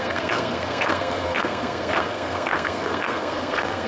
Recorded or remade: remade